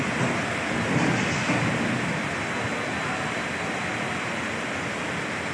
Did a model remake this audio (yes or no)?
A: no